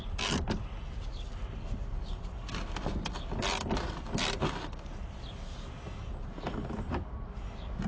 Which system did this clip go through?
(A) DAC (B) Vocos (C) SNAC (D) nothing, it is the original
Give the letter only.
D